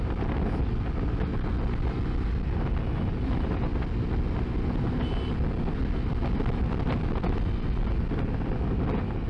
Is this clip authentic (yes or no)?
yes